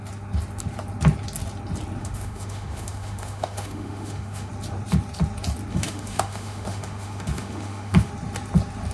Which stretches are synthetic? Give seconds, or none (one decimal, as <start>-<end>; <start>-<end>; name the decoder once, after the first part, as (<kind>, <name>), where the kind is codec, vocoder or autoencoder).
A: 2.0-4.5 (autoencoder, DAC-VAE); 5.7-8.1